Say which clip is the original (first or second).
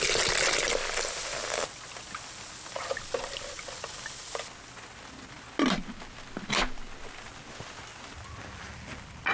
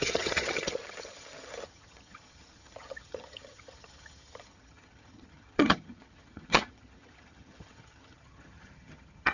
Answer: first